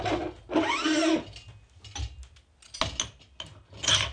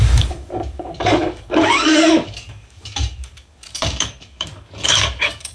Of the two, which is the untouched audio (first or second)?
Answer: first